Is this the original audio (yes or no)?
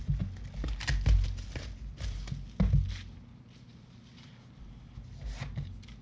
yes